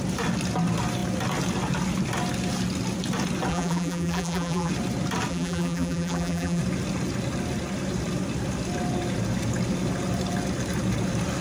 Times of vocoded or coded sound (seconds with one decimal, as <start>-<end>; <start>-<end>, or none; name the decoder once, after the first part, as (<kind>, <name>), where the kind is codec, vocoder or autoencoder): 3.5-4.7 (vocoder, BigVGAN v2); 5.3-6.6